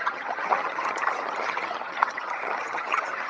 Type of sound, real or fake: fake